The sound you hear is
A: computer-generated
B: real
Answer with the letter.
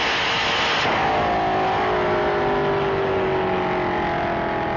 B